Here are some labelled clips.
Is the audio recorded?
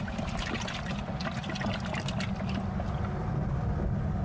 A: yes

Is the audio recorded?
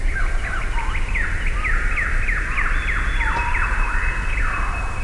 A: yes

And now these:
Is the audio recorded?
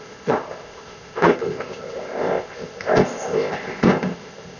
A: no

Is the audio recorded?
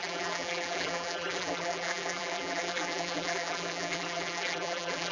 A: no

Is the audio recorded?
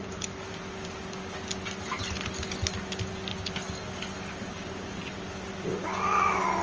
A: yes